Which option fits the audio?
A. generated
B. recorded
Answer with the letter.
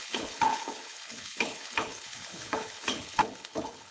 A